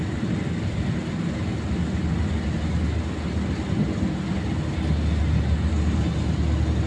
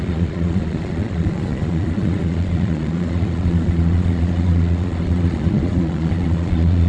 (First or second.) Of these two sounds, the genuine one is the first